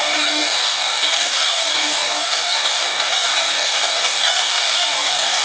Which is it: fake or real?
fake